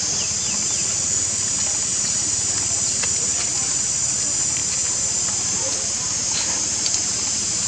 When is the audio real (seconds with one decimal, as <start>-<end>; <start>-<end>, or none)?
0.0-1.9; 2.6-3.5; 4.0-4.6